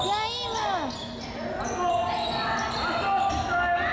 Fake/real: real